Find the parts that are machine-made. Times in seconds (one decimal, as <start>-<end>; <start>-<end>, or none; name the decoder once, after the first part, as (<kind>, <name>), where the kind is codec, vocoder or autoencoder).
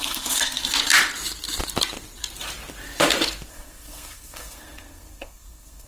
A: 0.0-0.6 (codec, SNAC); 3.5-5.9